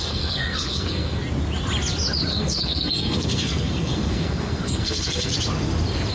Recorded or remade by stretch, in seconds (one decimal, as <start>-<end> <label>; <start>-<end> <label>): 0.0-1.2 remade; 1.2-2.3 recorded; 2.3-5.3 remade; 5.3-6.1 recorded